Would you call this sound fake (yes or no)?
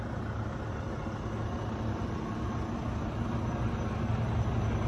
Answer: no